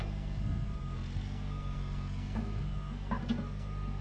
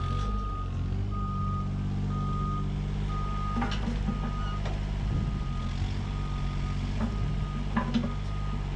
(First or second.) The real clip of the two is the second